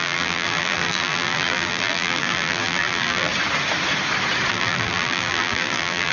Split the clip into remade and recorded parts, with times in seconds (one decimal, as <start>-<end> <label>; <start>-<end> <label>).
0.0-3.3 remade; 3.3-4.5 recorded; 4.5-6.1 remade